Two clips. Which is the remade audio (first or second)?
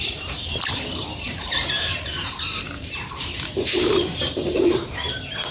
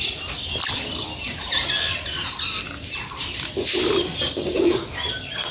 first